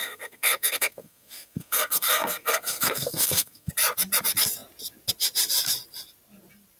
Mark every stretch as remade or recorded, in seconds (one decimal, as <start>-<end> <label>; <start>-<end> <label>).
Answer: 0.0-3.7 remade; 3.7-6.8 recorded